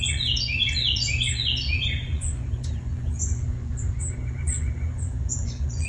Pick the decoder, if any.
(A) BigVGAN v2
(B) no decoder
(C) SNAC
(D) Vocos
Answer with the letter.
D